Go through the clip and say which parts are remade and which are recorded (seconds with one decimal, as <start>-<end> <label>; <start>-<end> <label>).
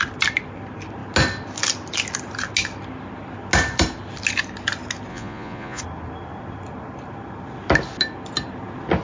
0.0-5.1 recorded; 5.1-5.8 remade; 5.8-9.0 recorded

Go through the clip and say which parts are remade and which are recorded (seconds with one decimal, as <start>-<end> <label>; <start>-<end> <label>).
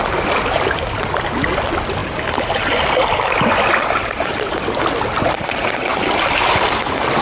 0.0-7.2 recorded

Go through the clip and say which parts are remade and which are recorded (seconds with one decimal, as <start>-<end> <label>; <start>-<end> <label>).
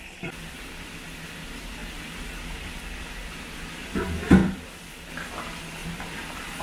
0.0-1.8 recorded; 1.8-3.9 remade; 3.9-4.4 recorded; 4.4-5.1 remade; 5.1-5.8 recorded; 5.8-6.6 remade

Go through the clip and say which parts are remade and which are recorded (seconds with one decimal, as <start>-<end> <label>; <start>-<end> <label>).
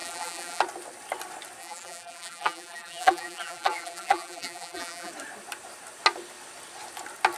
0.0-0.6 remade; 0.6-1.6 recorded; 1.6-5.1 remade; 5.1-7.4 recorded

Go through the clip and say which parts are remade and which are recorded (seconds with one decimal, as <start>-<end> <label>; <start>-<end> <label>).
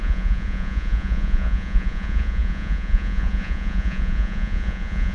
0.0-5.1 remade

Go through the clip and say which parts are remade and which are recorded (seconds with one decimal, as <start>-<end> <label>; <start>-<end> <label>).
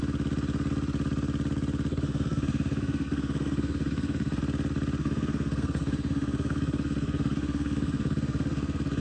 0.0-1.9 recorded; 1.9-4.4 remade; 4.4-5.0 recorded; 5.0-9.0 remade